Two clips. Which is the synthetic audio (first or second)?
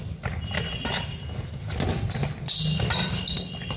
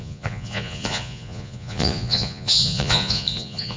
second